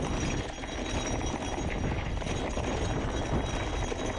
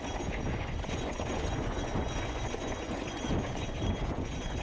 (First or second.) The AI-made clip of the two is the second